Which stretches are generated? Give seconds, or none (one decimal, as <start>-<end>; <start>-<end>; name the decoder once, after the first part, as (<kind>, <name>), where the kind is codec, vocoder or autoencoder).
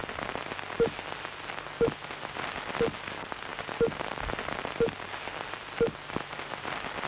none